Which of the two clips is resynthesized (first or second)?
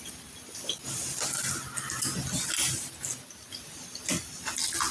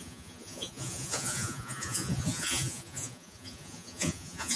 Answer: second